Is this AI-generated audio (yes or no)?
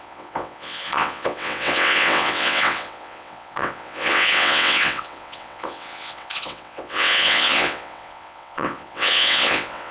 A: yes